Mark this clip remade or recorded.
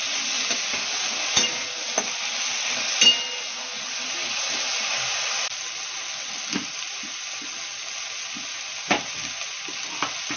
recorded